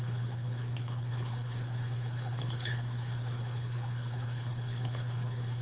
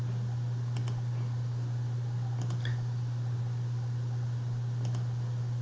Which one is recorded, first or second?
second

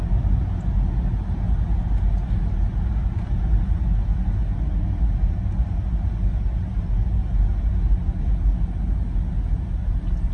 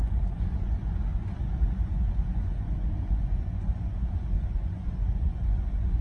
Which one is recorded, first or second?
first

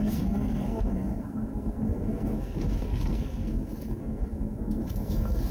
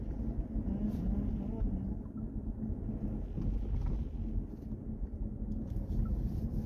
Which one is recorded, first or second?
second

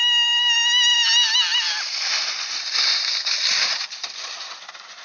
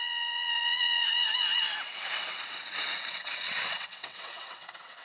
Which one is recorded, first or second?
first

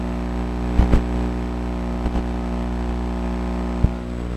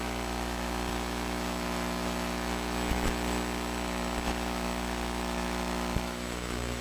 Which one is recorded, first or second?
first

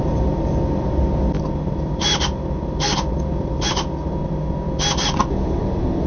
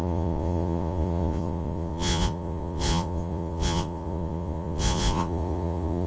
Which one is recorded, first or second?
first